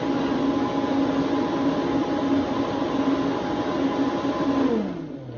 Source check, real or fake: real